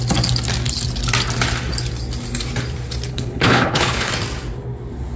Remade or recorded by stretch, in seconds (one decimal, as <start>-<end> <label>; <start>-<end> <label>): 0.0-3.1 recorded; 3.1-4.1 remade; 4.1-5.2 recorded